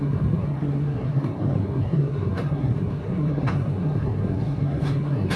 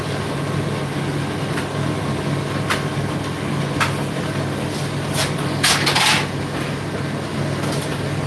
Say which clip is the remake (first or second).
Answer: first